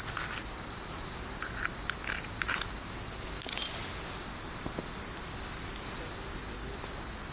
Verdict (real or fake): real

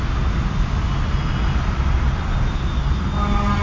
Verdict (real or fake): real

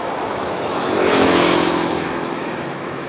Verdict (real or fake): fake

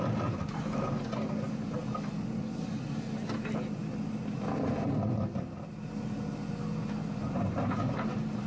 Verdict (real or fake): real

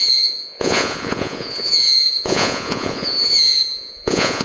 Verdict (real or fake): fake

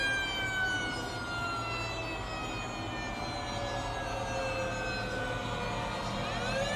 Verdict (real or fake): real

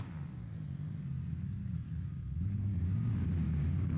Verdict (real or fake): real